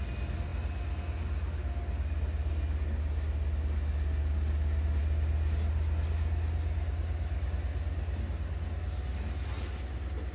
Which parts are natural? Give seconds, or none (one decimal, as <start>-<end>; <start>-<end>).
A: 0.0-10.3